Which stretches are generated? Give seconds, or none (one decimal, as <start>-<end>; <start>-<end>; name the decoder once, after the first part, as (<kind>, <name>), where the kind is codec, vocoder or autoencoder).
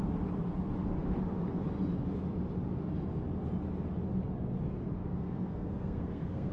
5.0-6.5 (codec, SNAC)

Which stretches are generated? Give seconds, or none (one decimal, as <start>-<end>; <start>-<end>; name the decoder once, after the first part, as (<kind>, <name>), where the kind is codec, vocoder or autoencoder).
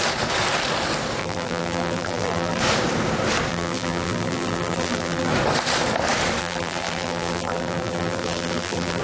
1.2-2.6 (vocoder, BigVGAN v2); 3.5-5.3; 6.4-9.0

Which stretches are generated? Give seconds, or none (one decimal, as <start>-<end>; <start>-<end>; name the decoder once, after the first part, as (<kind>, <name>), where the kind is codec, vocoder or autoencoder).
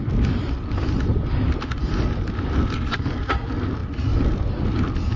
none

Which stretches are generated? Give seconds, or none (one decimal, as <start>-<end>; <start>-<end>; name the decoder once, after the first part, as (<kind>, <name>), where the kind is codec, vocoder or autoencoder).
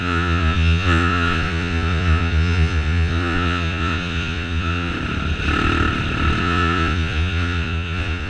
0.0-4.9 (vocoder, Vocos); 6.4-8.3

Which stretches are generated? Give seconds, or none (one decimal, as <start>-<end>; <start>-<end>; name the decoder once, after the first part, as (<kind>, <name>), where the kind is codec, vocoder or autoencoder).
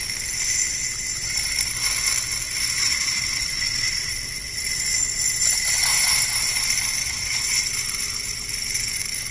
2.8-4.1 (vocoder, Vocos); 7.0-7.7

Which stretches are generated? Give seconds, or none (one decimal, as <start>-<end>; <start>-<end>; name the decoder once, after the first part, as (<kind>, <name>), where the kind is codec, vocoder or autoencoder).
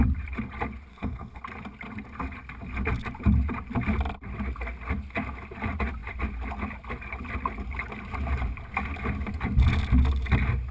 0.9-1.4 (codec, SNAC)